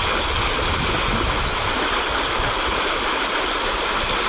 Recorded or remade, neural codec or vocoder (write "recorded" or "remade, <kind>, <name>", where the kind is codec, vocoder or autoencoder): recorded